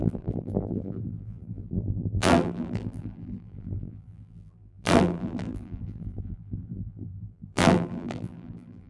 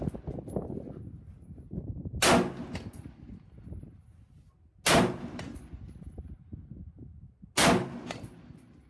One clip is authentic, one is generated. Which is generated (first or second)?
first